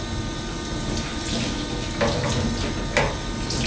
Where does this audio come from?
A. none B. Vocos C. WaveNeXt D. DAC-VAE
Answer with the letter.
A